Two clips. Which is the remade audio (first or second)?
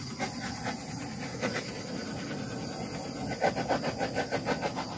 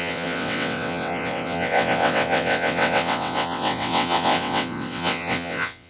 second